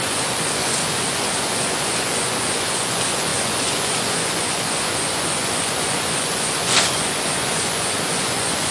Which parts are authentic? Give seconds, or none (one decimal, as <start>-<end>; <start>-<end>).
none